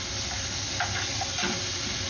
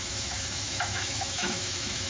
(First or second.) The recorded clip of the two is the first